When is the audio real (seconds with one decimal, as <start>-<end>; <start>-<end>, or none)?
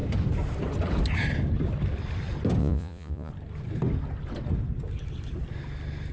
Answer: 0.0-2.6; 3.3-6.1